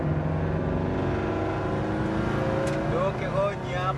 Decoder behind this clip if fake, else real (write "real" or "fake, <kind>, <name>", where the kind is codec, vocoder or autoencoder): real